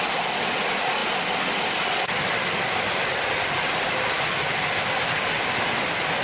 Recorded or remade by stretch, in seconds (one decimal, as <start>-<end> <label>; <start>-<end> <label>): 0.0-6.2 recorded

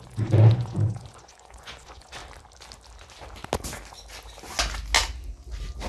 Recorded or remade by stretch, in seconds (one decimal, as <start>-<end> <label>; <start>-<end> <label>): 0.0-2.2 remade; 2.2-5.9 recorded

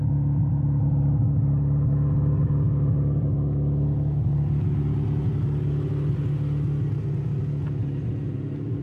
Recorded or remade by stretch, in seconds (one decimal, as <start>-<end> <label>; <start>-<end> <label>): 0.0-7.3 recorded; 7.3-8.8 remade

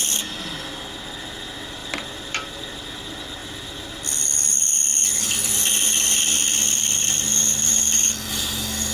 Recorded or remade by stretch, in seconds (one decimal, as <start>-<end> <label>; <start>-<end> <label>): 0.0-1.8 recorded; 1.8-2.7 remade; 2.7-3.4 recorded; 3.4-8.3 remade; 8.3-8.9 recorded

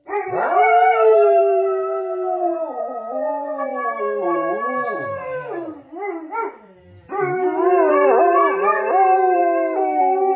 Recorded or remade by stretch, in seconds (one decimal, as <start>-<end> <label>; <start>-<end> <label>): 0.0-9.4 remade; 9.4-10.0 recorded; 10.0-10.4 remade

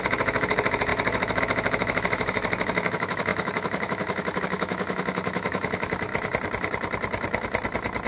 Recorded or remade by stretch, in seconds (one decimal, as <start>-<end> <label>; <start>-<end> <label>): 0.0-6.1 remade; 6.1-8.1 recorded

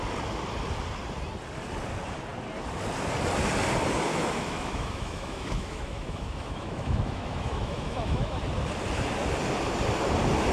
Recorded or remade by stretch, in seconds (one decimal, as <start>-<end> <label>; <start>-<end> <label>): 0.0-4.1 recorded; 4.1-8.4 remade; 8.4-10.5 recorded